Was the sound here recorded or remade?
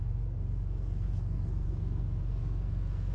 remade